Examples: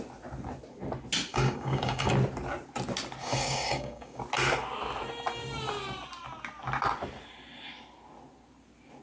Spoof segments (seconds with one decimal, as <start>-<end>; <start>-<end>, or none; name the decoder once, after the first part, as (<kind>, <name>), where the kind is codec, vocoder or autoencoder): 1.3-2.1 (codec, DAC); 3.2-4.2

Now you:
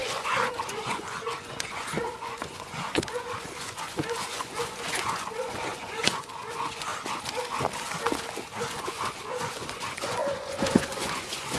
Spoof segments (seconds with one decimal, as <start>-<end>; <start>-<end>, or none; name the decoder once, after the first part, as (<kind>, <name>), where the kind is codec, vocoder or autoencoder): 0.0-6.9 (vocoder, Vocos); 8.6-11.6

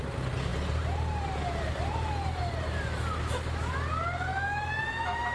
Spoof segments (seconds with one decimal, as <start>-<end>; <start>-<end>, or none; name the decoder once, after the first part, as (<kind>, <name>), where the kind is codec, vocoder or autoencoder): 4.3-4.8 (autoencoder, DAC-VAE)

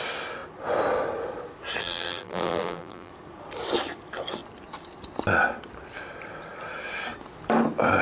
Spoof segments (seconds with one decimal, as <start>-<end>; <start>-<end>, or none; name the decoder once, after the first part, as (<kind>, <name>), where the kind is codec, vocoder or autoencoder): 1.8-3.1 (vocoder, BigVGAN v2)

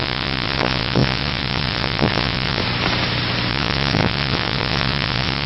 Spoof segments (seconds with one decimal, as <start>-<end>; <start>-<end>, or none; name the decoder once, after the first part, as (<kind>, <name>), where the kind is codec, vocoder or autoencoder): 0.0-2.6 (vocoder, WaveNeXt); 3.5-5.5

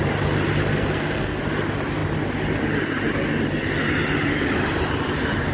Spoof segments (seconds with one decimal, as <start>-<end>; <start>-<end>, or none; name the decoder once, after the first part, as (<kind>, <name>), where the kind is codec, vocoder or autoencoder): 0.7-1.4 (codec, SNAC)

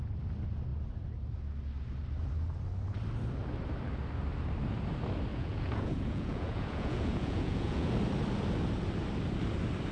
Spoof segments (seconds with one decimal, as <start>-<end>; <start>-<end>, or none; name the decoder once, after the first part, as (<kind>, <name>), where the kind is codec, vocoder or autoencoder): 5.3-7.9 (vocoder, Vocos)